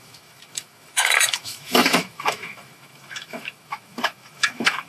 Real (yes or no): no